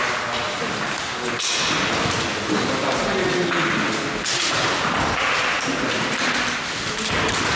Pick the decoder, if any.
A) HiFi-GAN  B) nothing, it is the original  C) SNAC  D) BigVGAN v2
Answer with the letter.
B